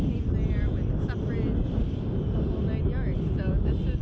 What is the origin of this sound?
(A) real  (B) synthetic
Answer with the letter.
A